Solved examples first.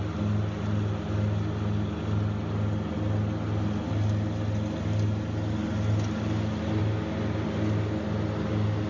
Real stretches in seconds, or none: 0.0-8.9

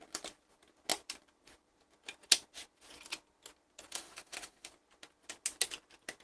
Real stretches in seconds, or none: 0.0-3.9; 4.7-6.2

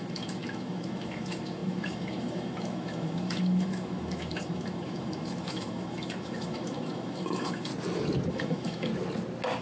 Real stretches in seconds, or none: 7.7-8.3; 8.9-9.6